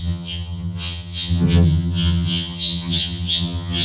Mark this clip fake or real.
fake